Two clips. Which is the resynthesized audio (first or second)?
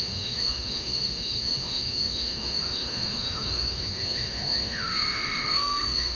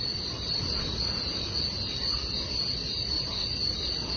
first